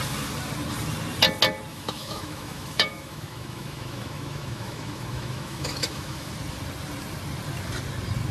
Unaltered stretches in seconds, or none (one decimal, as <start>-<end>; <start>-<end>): 0.0-1.7; 6.3-8.3